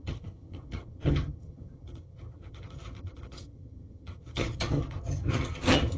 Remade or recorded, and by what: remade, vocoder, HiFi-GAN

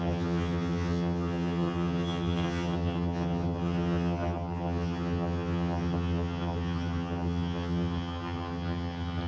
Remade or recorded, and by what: remade, vocoder, HiFi-GAN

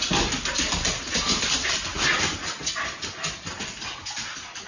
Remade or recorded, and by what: recorded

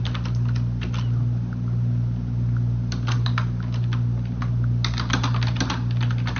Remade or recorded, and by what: recorded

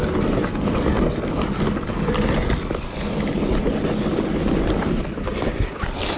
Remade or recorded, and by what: recorded